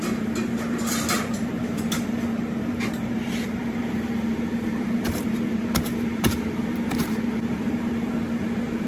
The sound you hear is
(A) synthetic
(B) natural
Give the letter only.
A